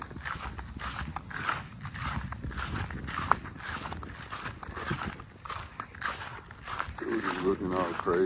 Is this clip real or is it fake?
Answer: real